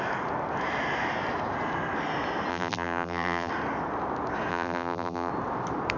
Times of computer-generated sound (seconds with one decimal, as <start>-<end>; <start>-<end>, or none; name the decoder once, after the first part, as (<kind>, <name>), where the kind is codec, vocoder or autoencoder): 2.5-3.5 (vocoder, BigVGAN v2); 4.5-5.3